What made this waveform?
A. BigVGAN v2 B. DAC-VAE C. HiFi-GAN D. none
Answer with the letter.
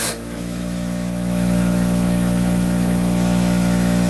B